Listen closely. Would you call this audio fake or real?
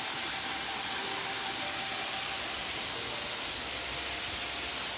real